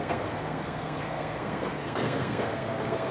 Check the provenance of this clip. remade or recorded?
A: remade